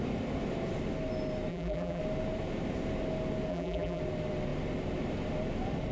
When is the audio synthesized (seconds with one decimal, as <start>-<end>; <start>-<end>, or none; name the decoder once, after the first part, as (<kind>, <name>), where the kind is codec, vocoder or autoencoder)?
1.5-2.0 (vocoder, BigVGAN v2); 3.5-4.0